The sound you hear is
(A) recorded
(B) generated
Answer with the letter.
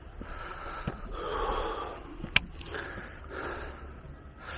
A